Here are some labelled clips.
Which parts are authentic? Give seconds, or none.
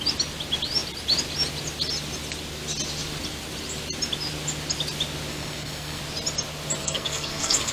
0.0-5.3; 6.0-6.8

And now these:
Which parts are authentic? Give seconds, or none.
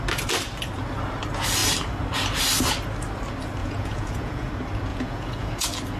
0.0-3.6; 4.5-4.9; 5.5-6.0